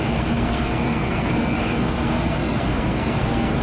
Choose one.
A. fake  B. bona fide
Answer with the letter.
A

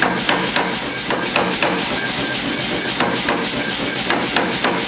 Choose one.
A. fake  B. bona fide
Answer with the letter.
B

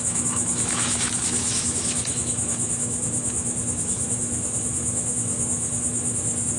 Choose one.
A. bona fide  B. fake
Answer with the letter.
B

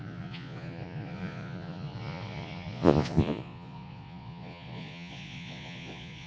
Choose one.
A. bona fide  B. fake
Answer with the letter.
B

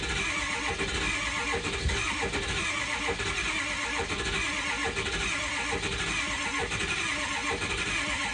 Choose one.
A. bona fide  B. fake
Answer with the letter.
A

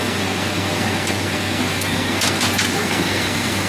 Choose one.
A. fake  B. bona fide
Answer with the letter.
A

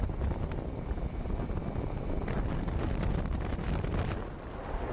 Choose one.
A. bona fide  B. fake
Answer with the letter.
A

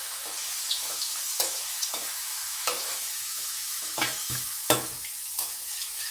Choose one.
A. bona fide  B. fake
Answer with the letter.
B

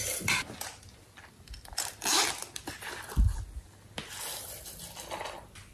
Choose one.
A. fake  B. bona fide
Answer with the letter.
B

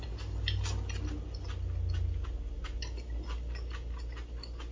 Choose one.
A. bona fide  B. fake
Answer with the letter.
A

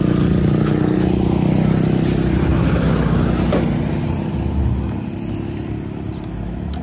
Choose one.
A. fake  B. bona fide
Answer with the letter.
B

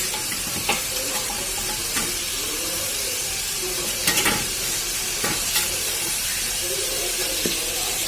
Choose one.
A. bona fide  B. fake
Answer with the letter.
B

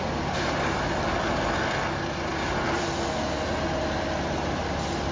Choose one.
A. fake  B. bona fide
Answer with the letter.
B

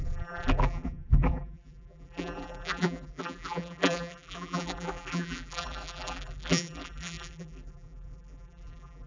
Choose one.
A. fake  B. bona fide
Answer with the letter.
A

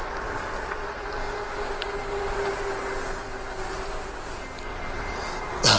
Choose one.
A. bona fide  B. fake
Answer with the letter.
A